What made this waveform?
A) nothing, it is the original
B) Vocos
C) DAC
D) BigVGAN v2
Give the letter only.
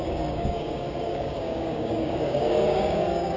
C